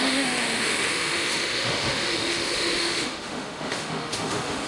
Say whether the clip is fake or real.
fake